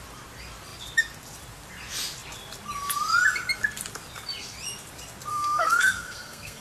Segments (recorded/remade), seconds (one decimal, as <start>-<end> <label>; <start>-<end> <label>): 0.0-5.3 recorded; 5.3-6.6 remade